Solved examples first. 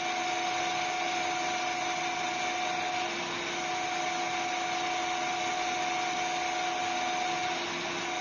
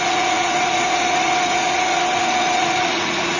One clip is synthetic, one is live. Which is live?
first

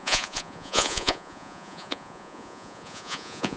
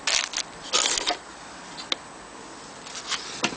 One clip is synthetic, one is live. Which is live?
second